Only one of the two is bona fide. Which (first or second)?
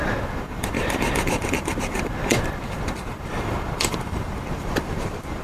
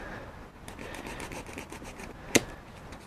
second